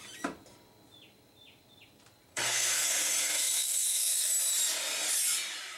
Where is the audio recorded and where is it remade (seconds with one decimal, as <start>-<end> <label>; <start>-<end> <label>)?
0.0-2.3 recorded; 2.3-4.3 remade; 4.3-5.8 recorded

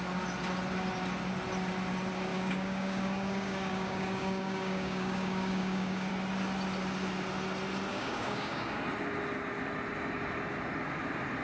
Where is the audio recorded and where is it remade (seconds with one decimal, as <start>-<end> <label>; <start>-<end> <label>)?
0.0-2.3 recorded; 2.3-6.1 remade; 6.1-7.9 recorded; 7.9-8.8 remade; 8.8-11.4 recorded

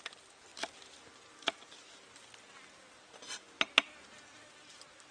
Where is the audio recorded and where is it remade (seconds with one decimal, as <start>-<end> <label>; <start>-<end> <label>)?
0.0-5.1 recorded

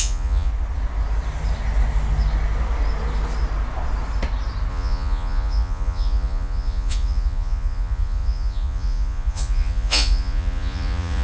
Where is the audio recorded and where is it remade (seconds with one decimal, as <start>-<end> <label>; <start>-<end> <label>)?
0.0-0.5 remade; 0.5-4.7 recorded; 4.7-11.2 remade